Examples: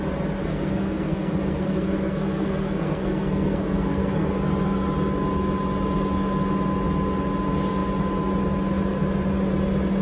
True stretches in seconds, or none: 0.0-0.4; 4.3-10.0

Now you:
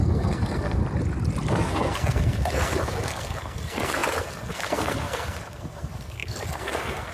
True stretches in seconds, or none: 0.8-1.5

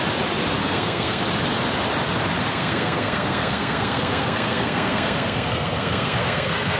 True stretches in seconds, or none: 0.0-0.6; 1.2-2.5

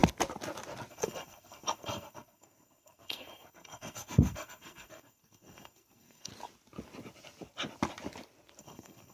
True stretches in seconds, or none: 0.0-0.9; 6.3-8.6

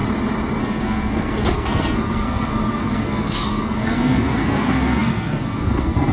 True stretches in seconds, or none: 0.0-0.6